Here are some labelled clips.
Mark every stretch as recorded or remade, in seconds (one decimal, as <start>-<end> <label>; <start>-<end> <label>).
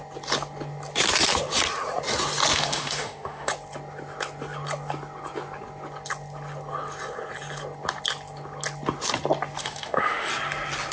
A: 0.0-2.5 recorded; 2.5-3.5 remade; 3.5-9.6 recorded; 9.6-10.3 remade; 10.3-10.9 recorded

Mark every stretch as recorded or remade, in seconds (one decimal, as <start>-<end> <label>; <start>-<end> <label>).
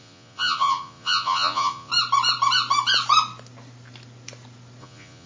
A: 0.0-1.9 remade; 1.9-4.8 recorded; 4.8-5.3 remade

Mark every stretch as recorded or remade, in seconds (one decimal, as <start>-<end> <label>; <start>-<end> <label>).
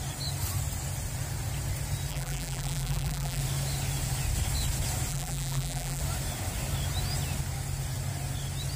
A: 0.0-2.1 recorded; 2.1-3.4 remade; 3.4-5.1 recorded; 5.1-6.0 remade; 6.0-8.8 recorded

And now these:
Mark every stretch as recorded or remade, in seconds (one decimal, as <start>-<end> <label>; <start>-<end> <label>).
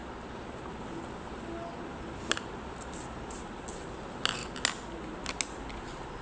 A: 0.0-6.2 recorded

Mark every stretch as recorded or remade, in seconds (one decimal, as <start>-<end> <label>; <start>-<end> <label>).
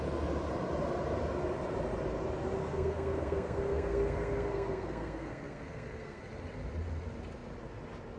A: 0.0-2.6 recorded; 2.6-6.2 remade; 6.2-8.2 recorded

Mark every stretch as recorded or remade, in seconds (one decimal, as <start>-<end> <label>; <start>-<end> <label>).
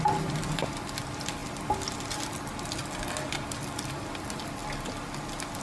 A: 0.0-2.8 remade; 2.8-3.5 recorded; 3.5-4.6 remade; 4.6-5.6 recorded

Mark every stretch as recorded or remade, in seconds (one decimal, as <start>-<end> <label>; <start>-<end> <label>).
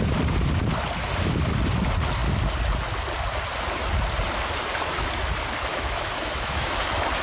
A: 0.0-5.7 recorded; 5.7-6.8 remade; 6.8-7.2 recorded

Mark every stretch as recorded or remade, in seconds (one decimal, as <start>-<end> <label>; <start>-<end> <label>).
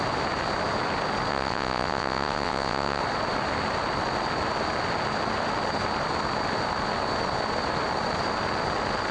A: 0.0-1.3 recorded; 1.3-3.0 remade; 3.0-9.1 recorded